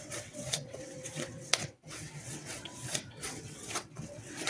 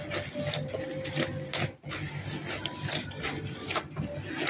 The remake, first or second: first